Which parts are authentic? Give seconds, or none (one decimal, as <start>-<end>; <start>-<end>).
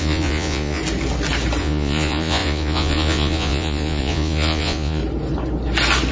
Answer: 0.8-1.6; 5.0-6.1